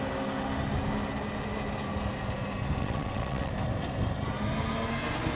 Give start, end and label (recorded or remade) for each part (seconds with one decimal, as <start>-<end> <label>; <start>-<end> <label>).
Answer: 0.0-2.8 recorded; 2.8-3.5 remade; 3.5-5.4 recorded